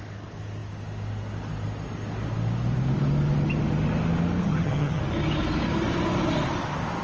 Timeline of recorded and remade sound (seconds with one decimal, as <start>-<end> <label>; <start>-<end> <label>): 0.0-4.4 recorded; 4.4-5.0 remade; 5.0-7.0 recorded